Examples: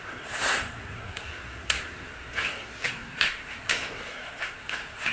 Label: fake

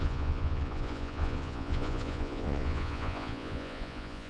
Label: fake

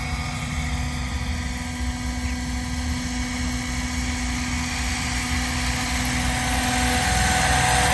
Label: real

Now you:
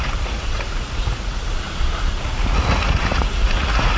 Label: fake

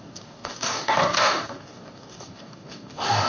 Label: fake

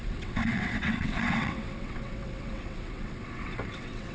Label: fake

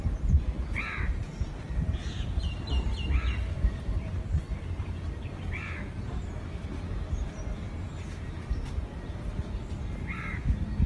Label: fake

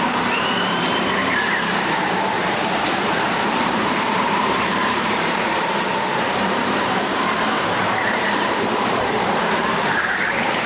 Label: fake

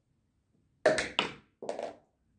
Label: real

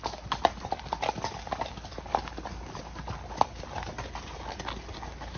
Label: real